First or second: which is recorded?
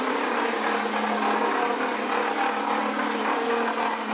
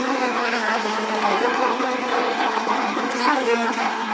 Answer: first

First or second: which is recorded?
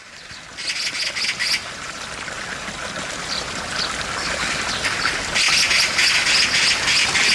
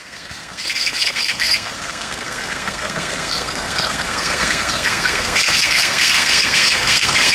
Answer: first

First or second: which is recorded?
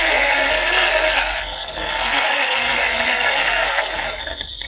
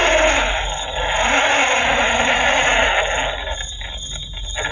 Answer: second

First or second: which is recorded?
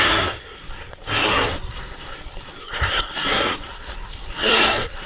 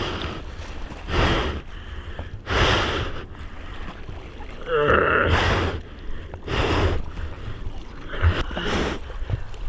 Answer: second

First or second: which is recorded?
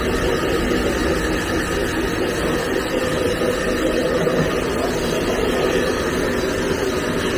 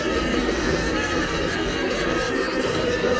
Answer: first